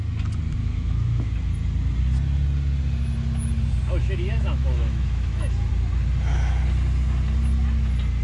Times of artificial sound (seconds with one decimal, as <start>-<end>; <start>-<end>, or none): 0.6-1.5; 4.0-5.7